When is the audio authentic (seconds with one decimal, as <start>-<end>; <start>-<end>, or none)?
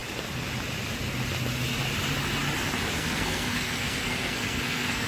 0.0-2.9